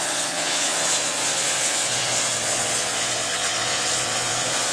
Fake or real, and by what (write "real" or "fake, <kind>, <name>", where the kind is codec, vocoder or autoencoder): fake, vocoder, Vocos